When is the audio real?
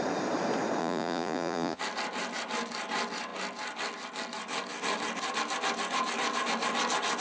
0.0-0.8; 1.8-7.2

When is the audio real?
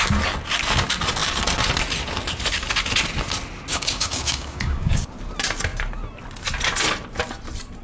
0.0-3.7; 5.0-7.8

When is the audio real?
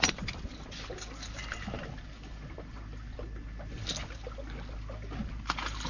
0.0-5.9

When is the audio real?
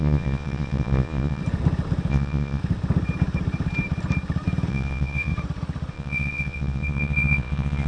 1.4-2.1; 2.6-4.7; 5.3-5.9